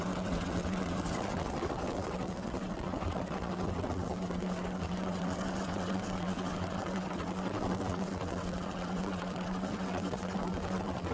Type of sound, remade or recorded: remade